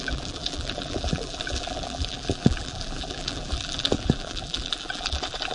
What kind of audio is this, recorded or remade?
remade